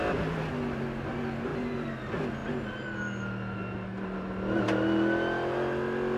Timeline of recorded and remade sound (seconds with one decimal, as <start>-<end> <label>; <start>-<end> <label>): 0.0-1.5 recorded; 1.5-2.0 remade; 2.0-6.2 recorded